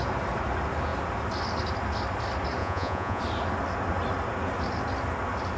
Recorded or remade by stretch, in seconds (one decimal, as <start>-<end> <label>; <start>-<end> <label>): 0.0-2.6 recorded; 2.6-3.2 remade; 3.2-5.6 recorded